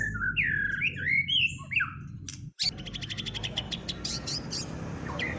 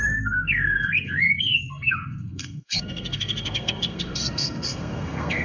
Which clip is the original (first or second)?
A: first